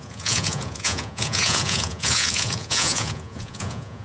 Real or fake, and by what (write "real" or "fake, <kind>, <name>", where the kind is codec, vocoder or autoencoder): fake, vocoder, Vocos